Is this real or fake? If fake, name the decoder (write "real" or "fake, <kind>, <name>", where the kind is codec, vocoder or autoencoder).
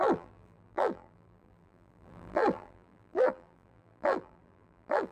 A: fake, vocoder, BigVGAN v2